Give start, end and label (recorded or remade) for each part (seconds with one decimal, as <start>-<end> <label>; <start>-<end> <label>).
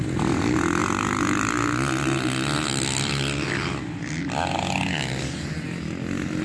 0.0-6.4 recorded